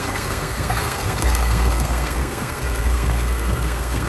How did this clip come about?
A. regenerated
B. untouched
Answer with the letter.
A